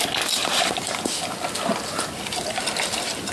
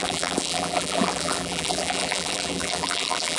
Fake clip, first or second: second